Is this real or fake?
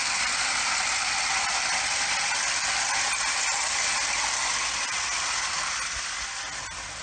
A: real